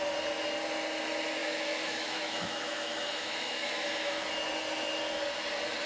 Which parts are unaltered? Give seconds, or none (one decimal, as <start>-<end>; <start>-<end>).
0.0-1.4; 4.3-5.9